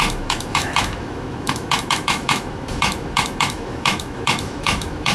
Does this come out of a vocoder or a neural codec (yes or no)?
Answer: yes